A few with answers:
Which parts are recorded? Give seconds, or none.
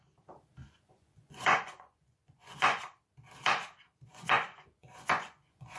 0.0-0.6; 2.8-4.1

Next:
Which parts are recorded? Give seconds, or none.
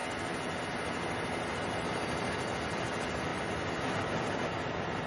0.0-5.1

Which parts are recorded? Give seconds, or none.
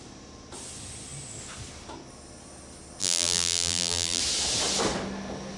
0.0-3.0; 4.2-5.6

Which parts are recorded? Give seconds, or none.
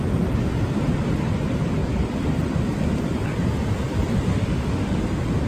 0.0-4.3; 5.0-5.5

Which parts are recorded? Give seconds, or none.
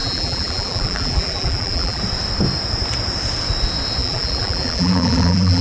2.0-4.0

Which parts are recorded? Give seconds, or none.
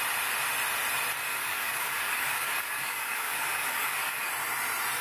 0.0-1.3; 4.3-5.0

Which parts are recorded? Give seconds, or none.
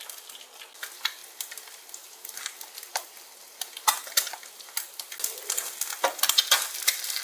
0.0-7.2